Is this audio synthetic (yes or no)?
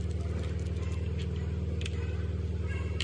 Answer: no